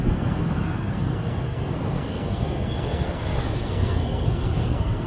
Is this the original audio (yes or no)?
no